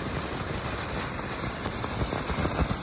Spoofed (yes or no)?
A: no